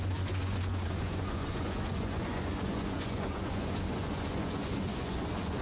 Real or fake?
fake